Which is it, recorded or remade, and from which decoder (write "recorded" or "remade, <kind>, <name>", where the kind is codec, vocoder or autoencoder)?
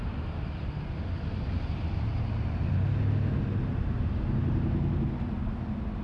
recorded